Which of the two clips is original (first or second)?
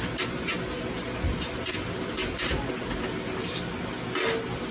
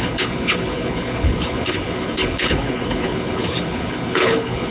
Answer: first